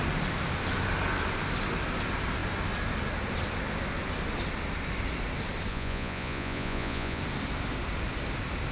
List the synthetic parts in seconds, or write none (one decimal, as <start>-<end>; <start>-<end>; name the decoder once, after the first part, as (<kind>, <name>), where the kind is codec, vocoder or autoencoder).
5.7-7.2 (vocoder, Vocos)